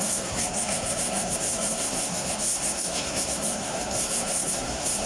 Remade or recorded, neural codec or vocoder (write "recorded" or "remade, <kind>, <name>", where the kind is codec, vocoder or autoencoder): remade, codec, SNAC